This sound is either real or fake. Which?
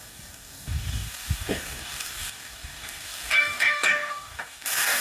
fake